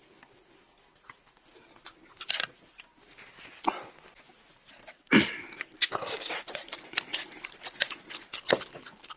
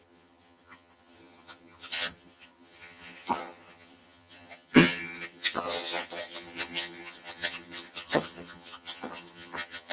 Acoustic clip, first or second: first